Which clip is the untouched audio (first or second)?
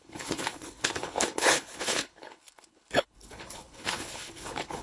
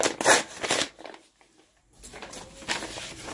second